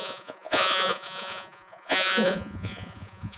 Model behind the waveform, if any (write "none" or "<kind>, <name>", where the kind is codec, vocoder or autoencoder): vocoder, Vocos